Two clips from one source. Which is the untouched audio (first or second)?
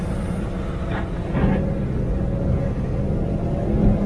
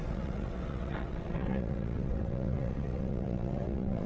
first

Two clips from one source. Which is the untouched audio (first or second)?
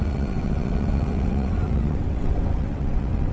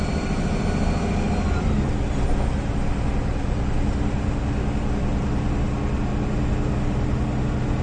second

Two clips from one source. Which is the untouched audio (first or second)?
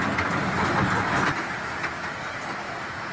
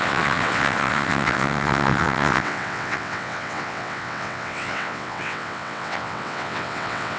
first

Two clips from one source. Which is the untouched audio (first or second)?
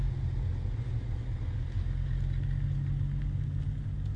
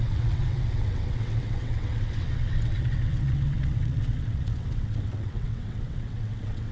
first